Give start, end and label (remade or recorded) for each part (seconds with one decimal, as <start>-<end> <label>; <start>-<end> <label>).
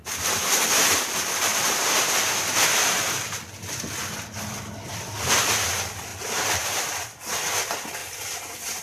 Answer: 0.0-1.5 recorded; 1.5-3.2 remade; 3.2-6.1 recorded; 6.1-7.2 remade; 7.2-8.8 recorded